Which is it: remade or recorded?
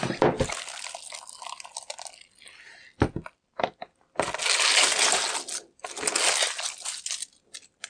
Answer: recorded